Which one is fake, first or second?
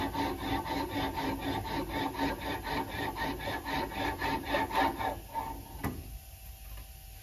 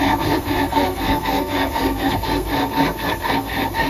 second